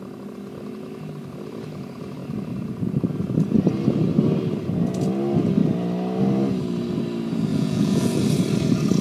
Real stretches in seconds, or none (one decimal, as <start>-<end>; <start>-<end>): 0.0-7.5; 8.2-9.0